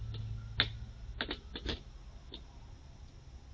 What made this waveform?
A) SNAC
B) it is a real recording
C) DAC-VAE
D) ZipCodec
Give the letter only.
B